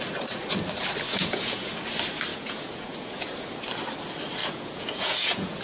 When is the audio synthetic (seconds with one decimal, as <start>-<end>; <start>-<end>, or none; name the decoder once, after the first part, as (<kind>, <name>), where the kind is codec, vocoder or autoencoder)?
1.1-1.7 (vocoder, Vocos); 2.3-3.3; 4.4-5.6